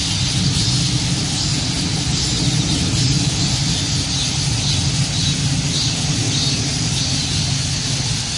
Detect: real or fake real